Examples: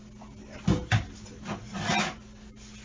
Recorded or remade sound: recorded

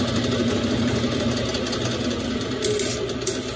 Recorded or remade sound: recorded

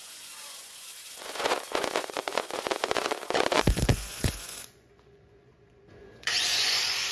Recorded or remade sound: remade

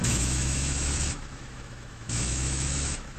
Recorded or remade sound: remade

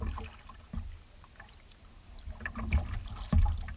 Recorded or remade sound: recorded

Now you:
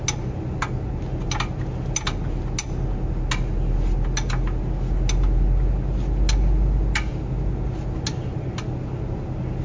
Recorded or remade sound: recorded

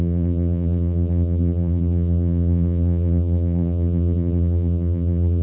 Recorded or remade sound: remade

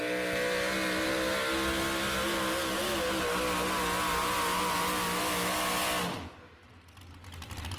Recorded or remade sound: recorded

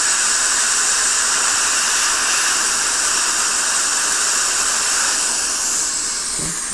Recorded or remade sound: remade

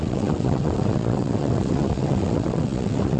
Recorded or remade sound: remade